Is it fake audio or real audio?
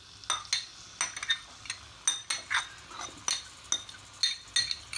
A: real